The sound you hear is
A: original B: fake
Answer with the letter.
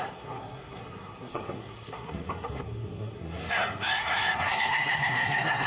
B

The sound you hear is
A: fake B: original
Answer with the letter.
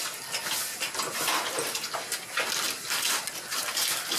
B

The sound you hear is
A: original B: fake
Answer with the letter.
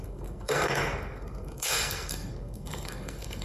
B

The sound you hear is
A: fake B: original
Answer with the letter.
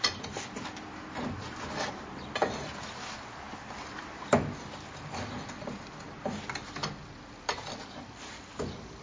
B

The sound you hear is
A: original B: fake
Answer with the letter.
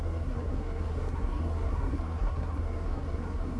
B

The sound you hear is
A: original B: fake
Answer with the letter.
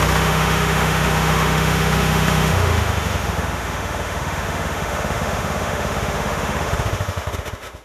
B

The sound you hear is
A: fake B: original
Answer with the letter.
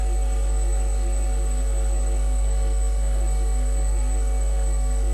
A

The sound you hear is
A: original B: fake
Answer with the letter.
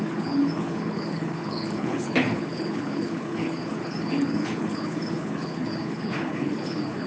B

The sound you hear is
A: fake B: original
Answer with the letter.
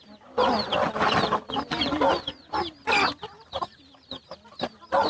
B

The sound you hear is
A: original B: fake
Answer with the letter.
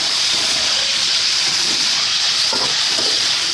B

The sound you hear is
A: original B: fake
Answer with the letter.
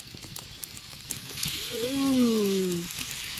B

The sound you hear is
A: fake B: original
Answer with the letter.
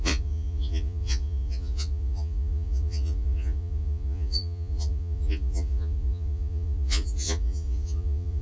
A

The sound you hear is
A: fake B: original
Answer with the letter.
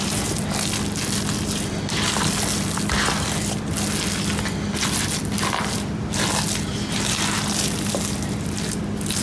B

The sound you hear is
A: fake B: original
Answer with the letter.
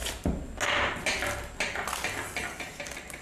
B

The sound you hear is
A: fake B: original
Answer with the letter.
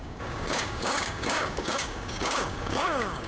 A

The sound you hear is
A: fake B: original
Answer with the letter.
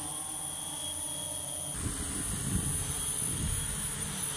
B